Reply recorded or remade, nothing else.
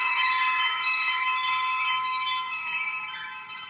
remade